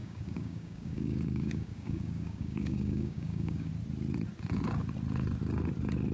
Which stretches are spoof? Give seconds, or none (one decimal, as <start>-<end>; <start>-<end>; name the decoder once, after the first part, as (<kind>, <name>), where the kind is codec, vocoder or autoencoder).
0.0-3.7 (codec, DAC)